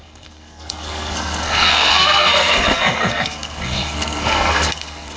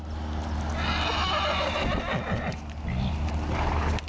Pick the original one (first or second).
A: second